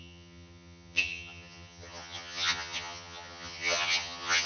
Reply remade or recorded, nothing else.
remade